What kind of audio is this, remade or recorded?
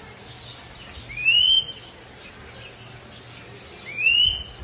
recorded